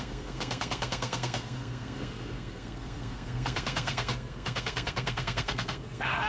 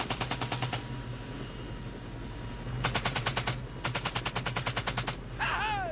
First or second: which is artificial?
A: first